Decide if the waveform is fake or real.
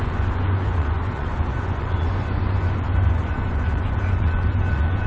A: fake